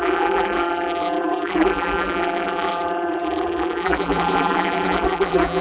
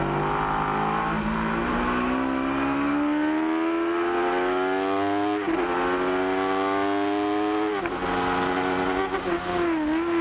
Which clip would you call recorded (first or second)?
second